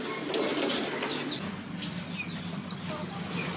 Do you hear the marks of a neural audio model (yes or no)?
no